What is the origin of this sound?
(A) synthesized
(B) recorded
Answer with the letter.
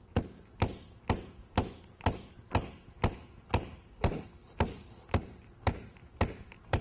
B